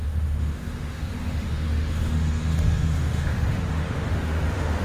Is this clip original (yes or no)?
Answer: no